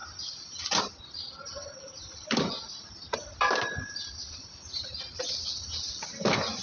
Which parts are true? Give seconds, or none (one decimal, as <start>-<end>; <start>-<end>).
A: 0.0-1.0